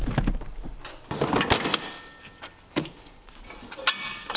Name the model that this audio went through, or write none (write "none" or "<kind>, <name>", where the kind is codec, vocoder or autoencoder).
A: none